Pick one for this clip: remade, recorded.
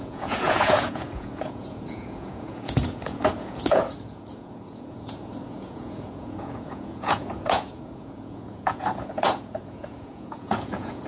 remade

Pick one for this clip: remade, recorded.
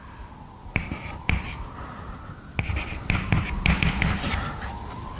recorded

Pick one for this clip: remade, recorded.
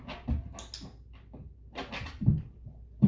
recorded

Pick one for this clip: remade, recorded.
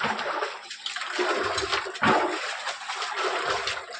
recorded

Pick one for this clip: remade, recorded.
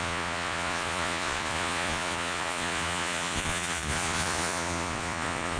remade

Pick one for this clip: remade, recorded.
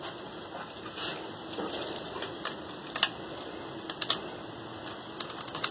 recorded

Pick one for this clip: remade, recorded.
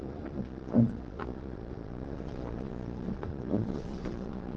remade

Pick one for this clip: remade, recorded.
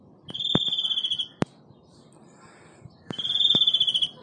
recorded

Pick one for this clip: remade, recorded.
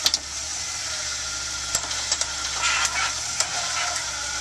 recorded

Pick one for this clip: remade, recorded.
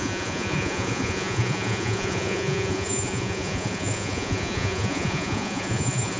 remade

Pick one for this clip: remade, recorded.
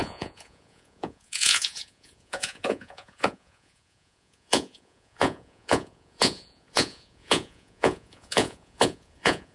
remade